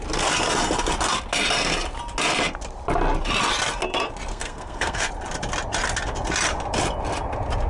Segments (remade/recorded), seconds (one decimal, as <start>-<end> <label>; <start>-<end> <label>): 0.0-4.3 recorded; 4.3-5.1 remade; 5.1-7.7 recorded